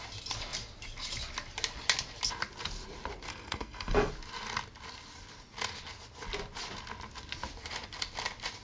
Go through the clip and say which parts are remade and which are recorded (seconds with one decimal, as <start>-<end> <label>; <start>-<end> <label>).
0.0-3.3 recorded; 3.3-4.1 remade; 4.1-8.6 recorded